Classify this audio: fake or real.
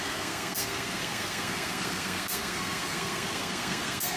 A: fake